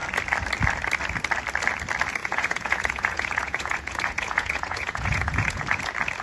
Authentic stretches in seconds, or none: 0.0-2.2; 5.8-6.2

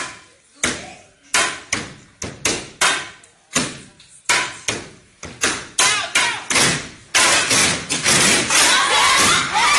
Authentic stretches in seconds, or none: 0.0-9.8

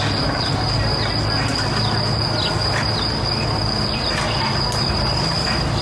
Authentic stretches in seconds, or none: 0.0-5.8

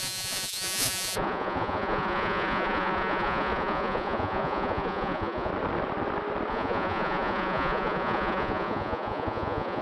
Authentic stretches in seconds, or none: 5.5-6.5

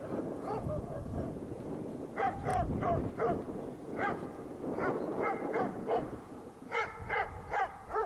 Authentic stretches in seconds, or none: 2.5-3.5